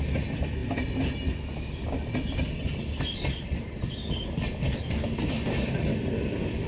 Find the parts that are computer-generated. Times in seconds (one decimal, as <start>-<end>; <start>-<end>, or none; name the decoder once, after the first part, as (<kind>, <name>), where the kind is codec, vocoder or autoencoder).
none